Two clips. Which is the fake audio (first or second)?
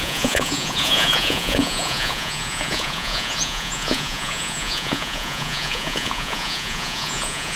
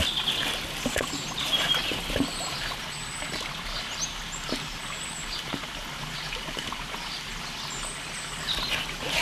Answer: first